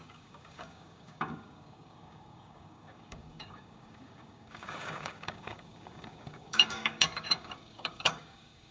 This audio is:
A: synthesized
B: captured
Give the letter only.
A